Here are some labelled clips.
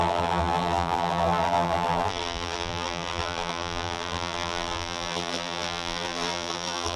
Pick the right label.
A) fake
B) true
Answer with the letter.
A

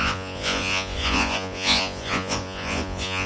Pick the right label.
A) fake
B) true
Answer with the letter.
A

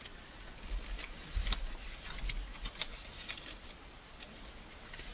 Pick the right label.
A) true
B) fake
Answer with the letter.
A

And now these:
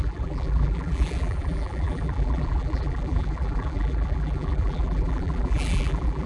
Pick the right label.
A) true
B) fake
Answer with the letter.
B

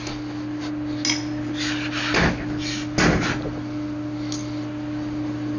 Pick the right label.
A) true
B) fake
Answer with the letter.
A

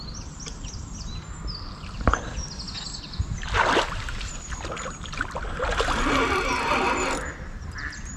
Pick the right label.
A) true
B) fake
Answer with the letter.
A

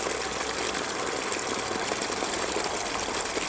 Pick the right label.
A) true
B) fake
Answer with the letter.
A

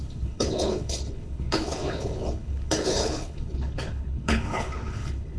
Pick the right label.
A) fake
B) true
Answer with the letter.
A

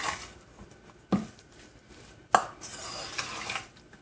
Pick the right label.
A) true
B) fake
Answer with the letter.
A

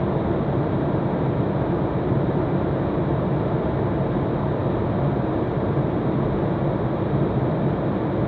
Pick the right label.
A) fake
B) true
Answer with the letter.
B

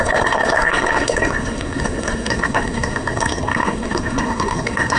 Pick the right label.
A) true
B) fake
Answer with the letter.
B